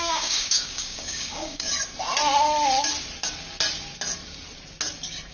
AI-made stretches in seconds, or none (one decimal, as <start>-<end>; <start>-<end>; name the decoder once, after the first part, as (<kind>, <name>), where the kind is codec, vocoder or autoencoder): 0.0-1.7 (codec, DAC)